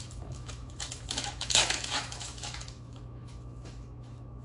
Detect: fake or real fake